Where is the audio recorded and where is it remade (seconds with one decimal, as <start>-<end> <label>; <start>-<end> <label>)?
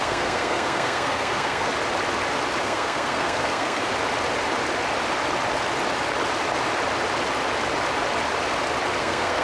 0.0-1.7 remade; 1.7-2.6 recorded; 2.6-3.9 remade; 3.9-9.0 recorded; 9.0-9.4 remade